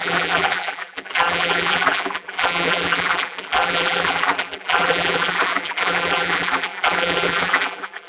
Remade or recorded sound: remade